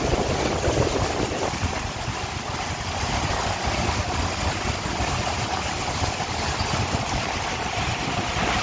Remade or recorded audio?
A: recorded